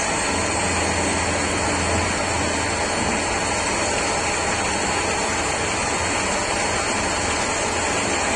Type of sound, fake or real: real